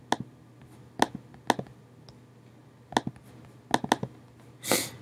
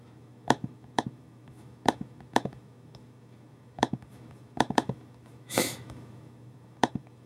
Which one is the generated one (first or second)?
second